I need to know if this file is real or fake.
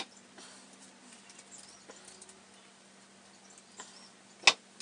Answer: real